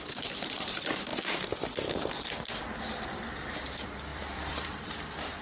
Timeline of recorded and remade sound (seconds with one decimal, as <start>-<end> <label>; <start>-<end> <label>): 0.0-1.1 remade; 1.1-2.1 recorded; 2.1-5.4 remade